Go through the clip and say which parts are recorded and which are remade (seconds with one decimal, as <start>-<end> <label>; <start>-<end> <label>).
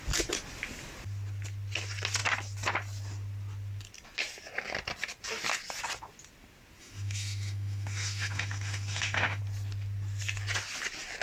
0.0-6.8 recorded; 6.8-9.4 remade; 9.4-11.2 recorded